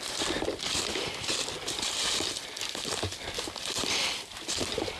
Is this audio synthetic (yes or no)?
no